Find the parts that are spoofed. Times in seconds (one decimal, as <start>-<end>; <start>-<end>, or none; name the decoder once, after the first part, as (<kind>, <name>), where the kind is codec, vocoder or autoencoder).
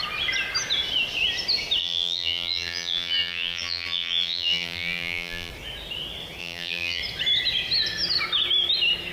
1.8-5.5 (vocoder, BigVGAN v2); 6.4-7.0